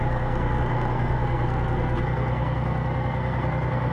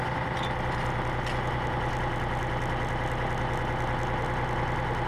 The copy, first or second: first